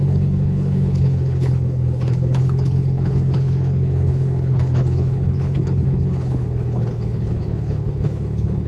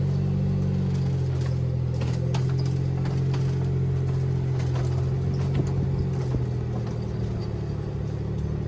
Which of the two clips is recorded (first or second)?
second